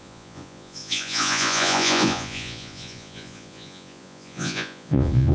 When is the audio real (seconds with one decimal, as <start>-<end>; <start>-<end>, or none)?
none